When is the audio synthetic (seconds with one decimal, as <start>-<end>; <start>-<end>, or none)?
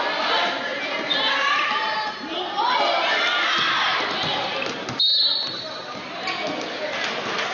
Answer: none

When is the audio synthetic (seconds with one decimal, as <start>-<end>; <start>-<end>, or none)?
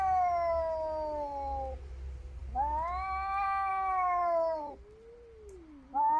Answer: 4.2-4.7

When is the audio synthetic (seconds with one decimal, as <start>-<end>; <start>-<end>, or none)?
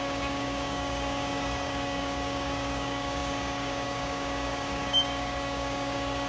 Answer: 0.0-6.3